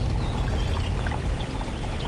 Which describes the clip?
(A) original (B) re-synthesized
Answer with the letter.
A